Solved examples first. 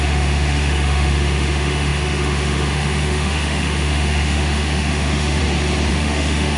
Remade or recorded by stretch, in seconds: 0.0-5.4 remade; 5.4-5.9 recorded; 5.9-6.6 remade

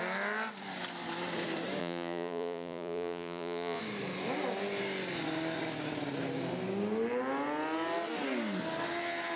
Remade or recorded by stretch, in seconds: 0.0-1.8 recorded; 1.8-3.8 remade; 3.8-9.4 recorded

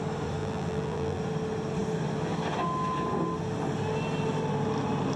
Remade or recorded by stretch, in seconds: 0.0-0.4 recorded; 0.4-1.2 remade; 1.2-5.2 recorded

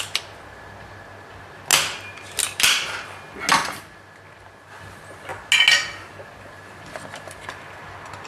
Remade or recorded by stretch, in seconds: 0.0-8.3 recorded

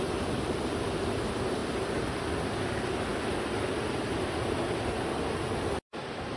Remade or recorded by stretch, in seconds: 0.0-6.4 recorded

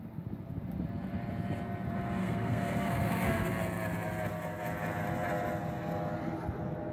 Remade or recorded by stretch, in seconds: 0.0-2.2 recorded; 2.2-3.5 remade; 3.5-6.9 recorded